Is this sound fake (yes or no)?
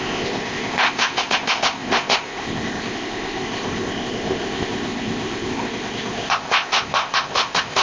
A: yes